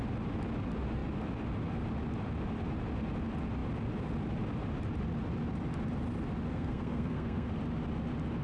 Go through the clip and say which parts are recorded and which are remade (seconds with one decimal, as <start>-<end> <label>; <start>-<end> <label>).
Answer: 0.0-6.5 recorded; 6.5-7.5 remade; 7.5-8.4 recorded